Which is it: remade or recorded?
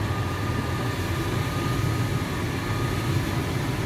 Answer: recorded